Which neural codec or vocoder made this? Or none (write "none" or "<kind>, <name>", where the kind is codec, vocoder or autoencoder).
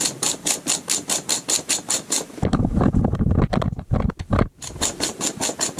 none